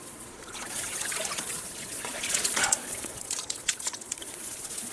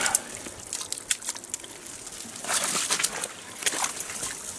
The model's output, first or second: first